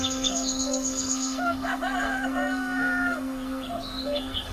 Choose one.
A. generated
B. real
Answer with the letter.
A